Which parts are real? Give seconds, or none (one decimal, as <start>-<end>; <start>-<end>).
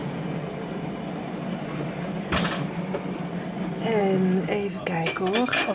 0.0-5.7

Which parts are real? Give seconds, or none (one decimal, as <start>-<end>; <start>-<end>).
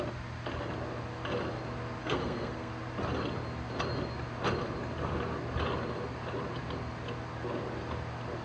0.0-2.0; 2.7-8.4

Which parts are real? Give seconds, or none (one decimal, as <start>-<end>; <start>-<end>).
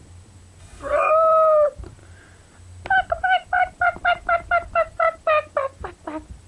0.0-0.6; 1.1-6.5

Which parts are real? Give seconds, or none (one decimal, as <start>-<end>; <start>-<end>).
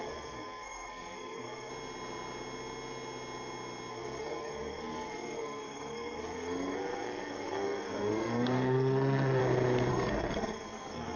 1.7-3.9; 9.4-9.9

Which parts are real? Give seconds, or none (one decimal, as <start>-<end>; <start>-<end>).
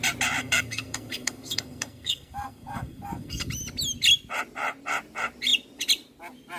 0.0-0.4; 3.5-6.6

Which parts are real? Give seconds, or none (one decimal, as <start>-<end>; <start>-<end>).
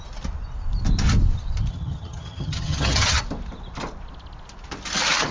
0.0-1.7; 3.2-5.3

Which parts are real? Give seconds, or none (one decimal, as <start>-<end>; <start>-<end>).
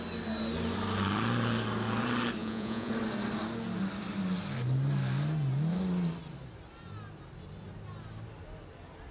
0.0-2.4; 2.9-9.1